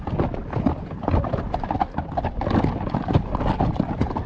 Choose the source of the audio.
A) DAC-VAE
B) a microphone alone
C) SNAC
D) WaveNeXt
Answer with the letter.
B